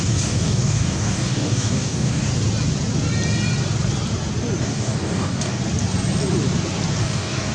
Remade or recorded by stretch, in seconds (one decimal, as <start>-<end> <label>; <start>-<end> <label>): 0.0-2.3 remade; 2.3-4.6 recorded; 4.6-5.6 remade; 5.6-7.0 recorded; 7.0-7.5 remade